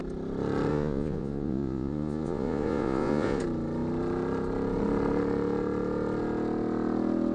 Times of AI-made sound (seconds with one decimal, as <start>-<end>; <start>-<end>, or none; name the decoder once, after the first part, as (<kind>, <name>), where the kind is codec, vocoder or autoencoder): 0.7-3.4 (vocoder, Vocos)